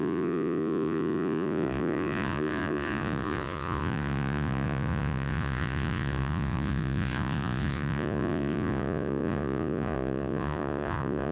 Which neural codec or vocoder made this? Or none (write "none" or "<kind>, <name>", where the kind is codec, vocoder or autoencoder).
vocoder, Vocos